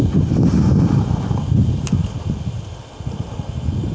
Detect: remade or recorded recorded